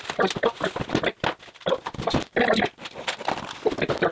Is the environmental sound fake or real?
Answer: real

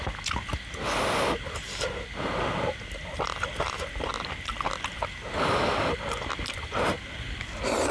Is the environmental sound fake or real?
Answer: real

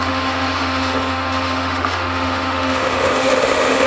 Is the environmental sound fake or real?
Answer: fake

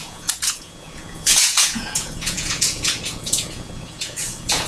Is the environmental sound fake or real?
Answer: fake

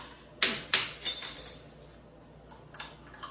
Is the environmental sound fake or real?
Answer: real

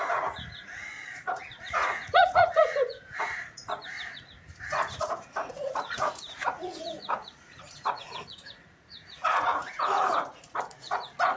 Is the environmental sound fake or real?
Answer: fake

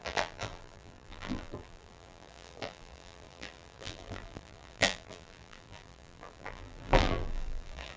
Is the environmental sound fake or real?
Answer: fake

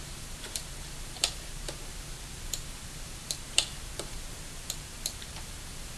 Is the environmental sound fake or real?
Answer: fake